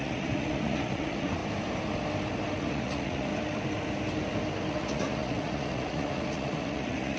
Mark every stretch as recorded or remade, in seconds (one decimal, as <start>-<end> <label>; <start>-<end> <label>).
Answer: 0.0-1.4 remade; 1.4-2.6 recorded; 2.6-3.3 remade; 3.3-4.7 recorded; 4.7-7.2 remade